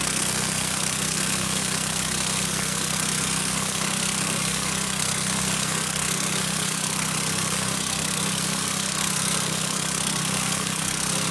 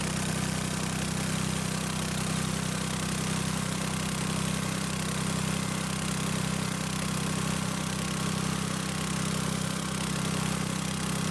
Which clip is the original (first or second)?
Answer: second